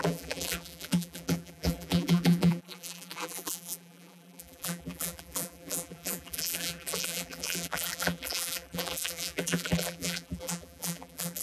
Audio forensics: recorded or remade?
remade